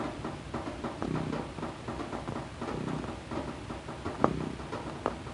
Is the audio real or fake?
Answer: real